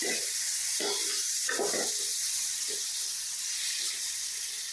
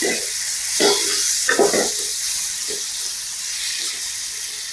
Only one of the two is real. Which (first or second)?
second